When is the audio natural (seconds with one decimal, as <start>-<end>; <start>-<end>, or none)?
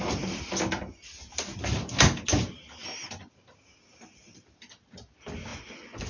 0.0-6.1